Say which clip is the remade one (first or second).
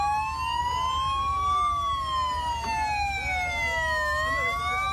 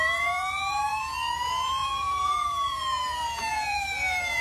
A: second